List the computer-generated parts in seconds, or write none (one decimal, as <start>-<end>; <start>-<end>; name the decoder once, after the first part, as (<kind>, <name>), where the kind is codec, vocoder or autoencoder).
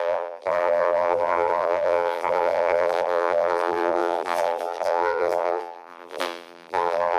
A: 0.0-7.2 (vocoder, BigVGAN v2)